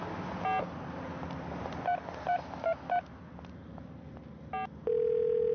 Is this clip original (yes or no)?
yes